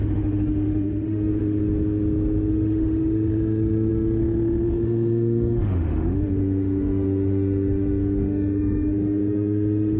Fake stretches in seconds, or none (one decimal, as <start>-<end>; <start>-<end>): 0.0-1.3; 2.5-10.0